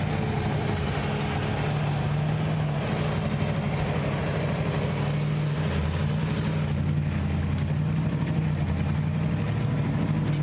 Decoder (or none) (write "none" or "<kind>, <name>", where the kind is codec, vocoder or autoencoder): none